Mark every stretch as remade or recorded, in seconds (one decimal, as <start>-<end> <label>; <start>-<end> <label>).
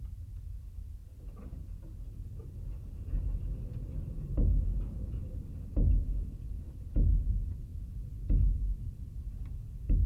0.0-10.1 recorded